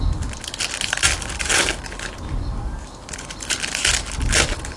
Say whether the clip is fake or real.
real